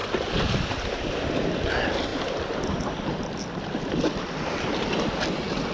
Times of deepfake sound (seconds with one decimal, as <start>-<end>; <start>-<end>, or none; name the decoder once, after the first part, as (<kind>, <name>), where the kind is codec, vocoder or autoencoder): none